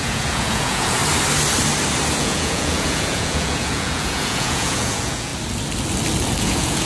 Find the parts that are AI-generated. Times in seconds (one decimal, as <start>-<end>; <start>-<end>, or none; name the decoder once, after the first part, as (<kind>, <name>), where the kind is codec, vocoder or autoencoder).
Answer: 0.0-1.0 (vocoder, Vocos); 2.1-5.3; 6.4-6.9